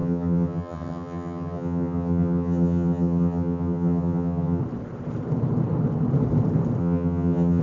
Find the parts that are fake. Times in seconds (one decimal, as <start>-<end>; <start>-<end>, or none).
0.0-4.6; 6.8-7.6